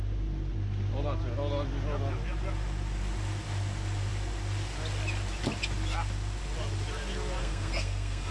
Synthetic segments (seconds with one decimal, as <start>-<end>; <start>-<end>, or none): 7.4-8.3